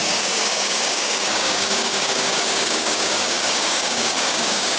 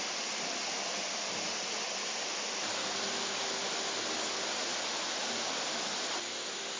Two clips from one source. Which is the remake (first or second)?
first